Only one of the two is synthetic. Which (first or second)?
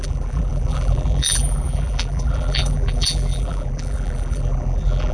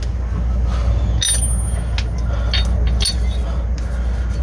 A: first